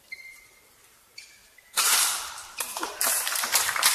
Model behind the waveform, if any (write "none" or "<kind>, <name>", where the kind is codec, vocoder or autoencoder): vocoder, BigVGAN v2